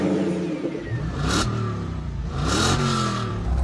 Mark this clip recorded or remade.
remade